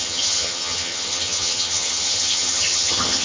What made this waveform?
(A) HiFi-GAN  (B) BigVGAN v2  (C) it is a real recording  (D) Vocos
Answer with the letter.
A